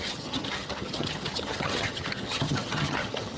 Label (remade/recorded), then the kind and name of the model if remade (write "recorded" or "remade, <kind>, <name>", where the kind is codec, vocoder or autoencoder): remade, vocoder, HiFi-GAN